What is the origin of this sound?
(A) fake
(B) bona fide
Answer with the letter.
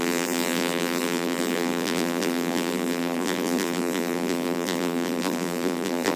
A